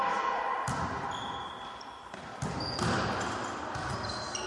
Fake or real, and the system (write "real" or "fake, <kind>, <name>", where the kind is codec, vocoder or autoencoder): real